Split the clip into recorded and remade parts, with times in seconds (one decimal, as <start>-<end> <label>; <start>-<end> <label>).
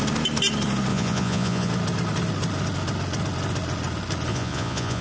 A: 0.0-0.9 recorded; 0.9-1.7 remade; 1.7-4.3 recorded; 4.3-5.0 remade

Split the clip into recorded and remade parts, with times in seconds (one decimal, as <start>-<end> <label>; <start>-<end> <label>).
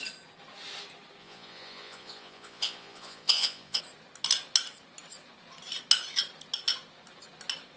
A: 0.0-1.2 recorded; 1.2-3.8 remade; 3.8-7.8 recorded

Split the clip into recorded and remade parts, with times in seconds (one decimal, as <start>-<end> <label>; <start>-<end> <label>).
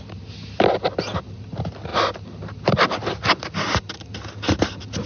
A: 0.0-5.1 recorded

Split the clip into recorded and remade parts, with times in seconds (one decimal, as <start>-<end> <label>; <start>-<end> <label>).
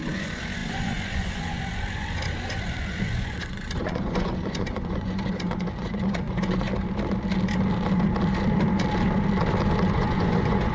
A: 0.0-6.7 remade; 6.7-9.9 recorded; 9.9-10.7 remade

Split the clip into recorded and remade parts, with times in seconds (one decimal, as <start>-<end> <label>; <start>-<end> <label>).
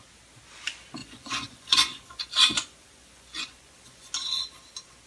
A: 0.0-1.0 recorded; 1.0-4.1 remade; 4.1-5.1 recorded